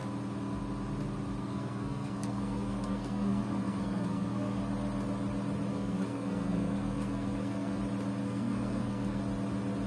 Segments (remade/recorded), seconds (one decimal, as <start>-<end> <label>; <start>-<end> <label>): 0.0-1.4 recorded; 1.4-4.6 remade; 4.6-5.7 recorded; 5.7-7.8 remade; 7.8-8.2 recorded; 8.2-9.2 remade; 9.2-9.9 recorded